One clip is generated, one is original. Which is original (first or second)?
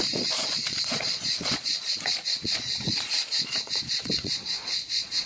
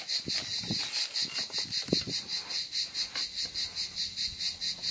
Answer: second